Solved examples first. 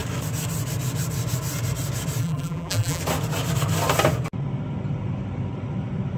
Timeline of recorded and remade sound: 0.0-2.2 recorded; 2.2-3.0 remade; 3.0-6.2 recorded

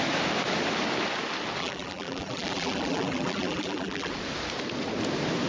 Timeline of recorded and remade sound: 0.0-1.6 recorded; 1.6-4.1 remade; 4.1-5.5 recorded

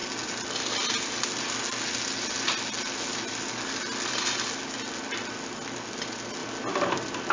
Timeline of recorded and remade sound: 0.0-7.3 recorded

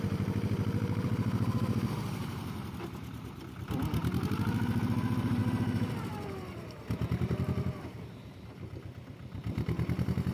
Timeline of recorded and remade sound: 0.0-10.3 remade

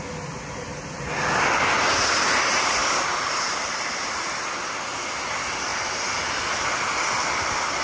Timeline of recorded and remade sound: 0.0-2.8 recorded; 2.8-4.2 remade; 4.2-7.8 recorded

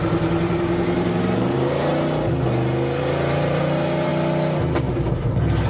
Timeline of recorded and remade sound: 0.0-1.9 remade; 1.9-3.0 recorded; 3.0-4.1 remade; 4.1-4.9 recorded; 4.9-5.7 remade